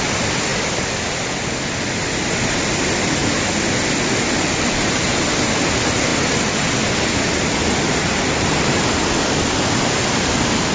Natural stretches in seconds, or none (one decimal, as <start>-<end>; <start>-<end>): 0.0-10.7